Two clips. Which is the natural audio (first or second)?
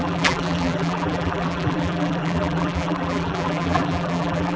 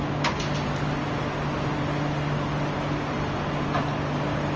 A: second